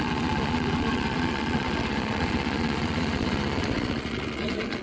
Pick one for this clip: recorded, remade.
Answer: remade